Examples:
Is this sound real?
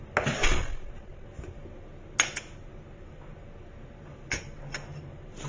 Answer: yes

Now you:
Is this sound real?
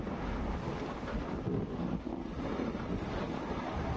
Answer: yes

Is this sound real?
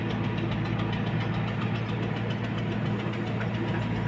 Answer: yes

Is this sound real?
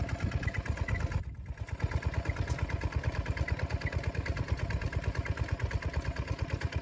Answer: yes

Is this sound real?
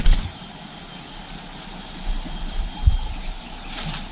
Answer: yes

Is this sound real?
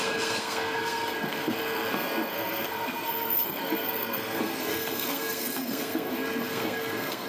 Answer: no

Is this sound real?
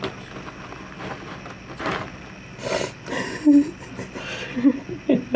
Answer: yes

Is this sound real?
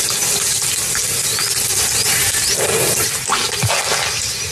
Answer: yes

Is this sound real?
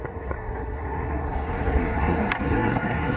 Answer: no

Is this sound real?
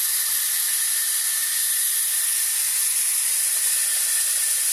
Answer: yes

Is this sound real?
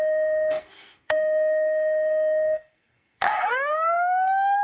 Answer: no